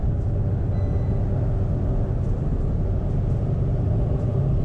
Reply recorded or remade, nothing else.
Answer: recorded